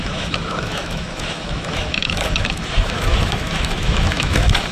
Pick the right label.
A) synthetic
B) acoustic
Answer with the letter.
A